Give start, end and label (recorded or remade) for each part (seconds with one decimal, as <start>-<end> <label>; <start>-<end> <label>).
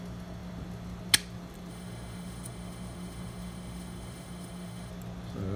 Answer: 0.0-1.7 recorded; 1.7-4.9 remade; 4.9-5.6 recorded